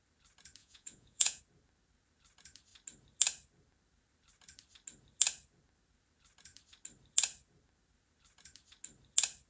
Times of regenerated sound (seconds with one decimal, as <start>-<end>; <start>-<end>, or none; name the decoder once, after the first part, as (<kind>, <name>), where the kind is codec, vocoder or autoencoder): 0.6-1.4 (vocoder, Vocos)